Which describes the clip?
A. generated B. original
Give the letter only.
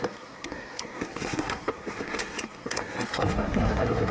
A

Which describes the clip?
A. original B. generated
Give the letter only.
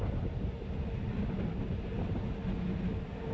A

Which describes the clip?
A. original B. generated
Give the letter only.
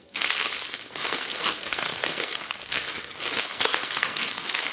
B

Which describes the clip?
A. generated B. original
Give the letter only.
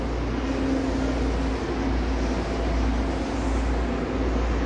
B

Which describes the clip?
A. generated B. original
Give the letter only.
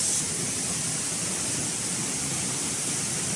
B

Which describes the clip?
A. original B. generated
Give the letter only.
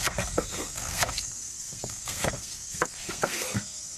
B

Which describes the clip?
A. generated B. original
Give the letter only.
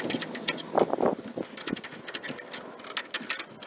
B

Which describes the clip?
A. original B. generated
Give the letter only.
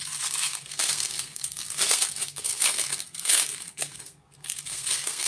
B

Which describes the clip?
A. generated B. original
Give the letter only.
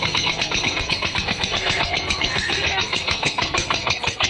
A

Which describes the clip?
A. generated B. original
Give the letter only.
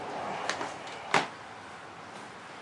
B